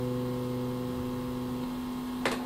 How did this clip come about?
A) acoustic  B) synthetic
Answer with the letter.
A